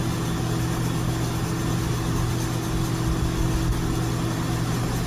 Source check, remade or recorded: recorded